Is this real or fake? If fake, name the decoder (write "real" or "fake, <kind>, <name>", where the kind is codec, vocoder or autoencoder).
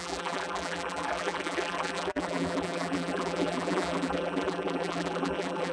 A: fake, vocoder, BigVGAN v2